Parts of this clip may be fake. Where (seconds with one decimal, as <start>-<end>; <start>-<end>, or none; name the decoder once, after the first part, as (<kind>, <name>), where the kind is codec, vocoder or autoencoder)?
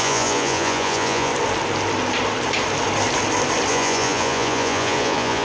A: 0.0-1.3 (vocoder, Vocos); 3.7-5.4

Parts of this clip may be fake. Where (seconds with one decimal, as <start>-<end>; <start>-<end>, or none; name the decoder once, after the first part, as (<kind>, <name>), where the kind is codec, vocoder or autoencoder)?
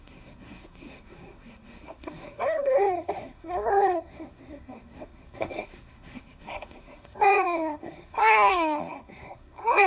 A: 0.0-9.9 (codec, SNAC)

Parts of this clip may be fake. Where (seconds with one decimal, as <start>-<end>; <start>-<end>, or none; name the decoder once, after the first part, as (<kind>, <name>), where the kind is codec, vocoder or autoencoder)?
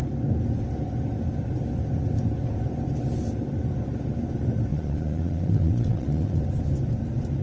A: 4.7-6.4 (vocoder, Vocos)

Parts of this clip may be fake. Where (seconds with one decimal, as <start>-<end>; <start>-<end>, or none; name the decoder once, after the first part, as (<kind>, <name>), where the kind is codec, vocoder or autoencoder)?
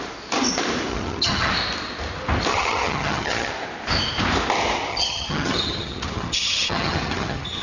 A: 0.9-1.5 (vocoder, HiFi-GAN); 2.5-3.5; 4.9-7.6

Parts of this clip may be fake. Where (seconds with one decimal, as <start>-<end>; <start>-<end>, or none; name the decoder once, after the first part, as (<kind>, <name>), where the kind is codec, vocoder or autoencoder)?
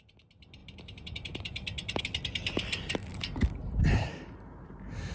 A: 0.6-2.0 (vocoder, BigVGAN v2); 3.1-5.1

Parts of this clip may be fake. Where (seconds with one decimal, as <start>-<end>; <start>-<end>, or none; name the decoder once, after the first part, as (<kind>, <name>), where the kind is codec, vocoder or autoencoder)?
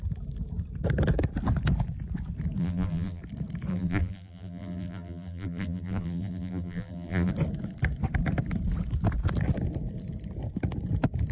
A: 2.6-3.2 (vocoder, BigVGAN v2); 3.7-7.3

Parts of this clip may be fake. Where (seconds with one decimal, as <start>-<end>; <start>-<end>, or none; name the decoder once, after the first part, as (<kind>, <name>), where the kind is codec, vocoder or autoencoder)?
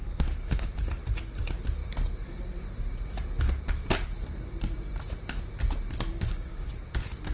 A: 0.0-0.7 (codec, DAC); 6.1-6.7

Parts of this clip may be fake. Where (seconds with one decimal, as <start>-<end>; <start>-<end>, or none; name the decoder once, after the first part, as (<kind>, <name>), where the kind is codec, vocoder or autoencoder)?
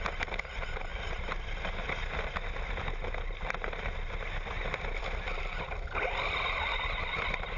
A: none